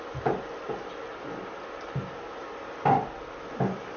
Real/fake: real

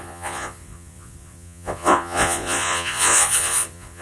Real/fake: fake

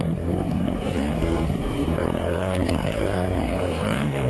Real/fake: fake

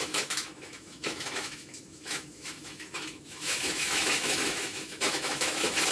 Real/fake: fake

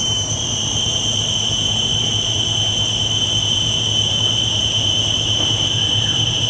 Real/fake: fake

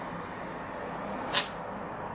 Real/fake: real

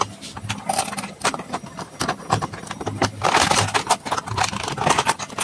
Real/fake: real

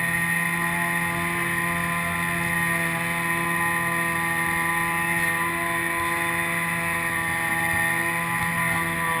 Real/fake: real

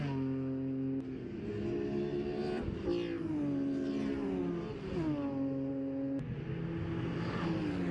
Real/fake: real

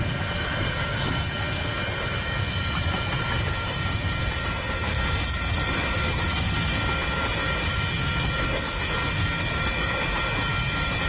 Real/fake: real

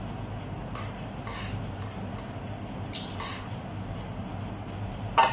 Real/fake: real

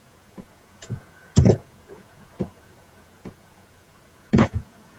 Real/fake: fake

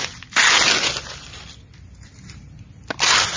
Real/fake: real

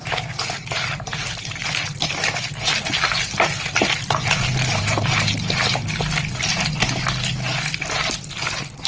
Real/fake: real